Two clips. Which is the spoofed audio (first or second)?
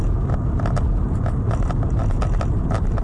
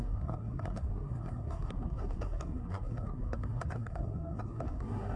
second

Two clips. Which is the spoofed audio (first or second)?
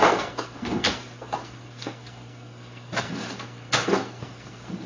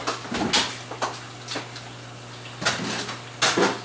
first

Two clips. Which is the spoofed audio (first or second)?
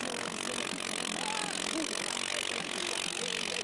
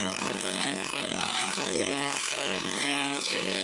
second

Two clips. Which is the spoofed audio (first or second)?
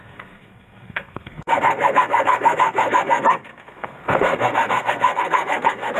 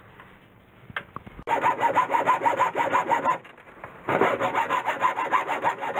first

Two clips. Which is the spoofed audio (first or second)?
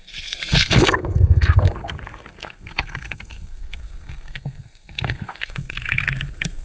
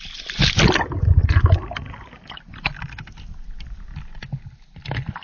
first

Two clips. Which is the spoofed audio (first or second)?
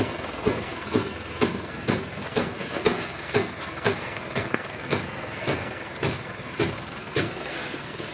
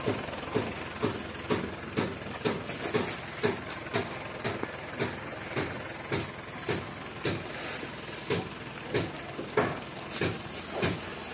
first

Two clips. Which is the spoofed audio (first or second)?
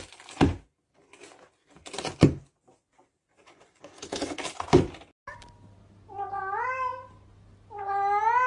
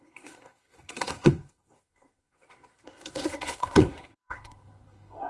second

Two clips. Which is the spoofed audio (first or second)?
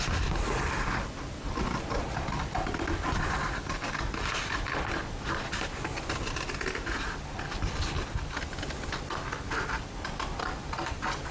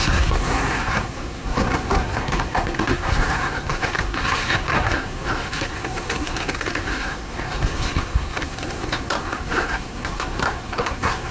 second